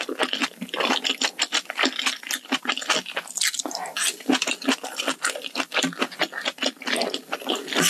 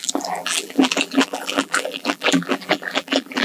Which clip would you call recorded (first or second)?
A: first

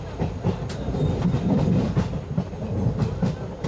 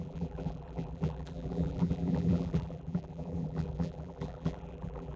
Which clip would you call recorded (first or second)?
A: first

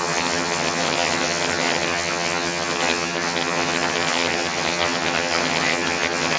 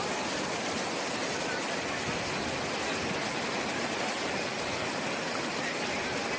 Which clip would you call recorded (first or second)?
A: second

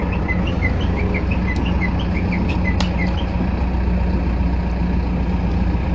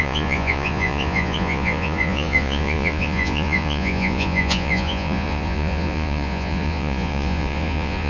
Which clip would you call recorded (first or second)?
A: first